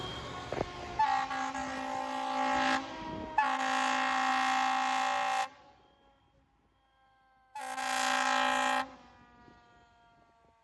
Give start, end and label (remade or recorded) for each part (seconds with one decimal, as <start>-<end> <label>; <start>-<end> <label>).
0.0-10.6 recorded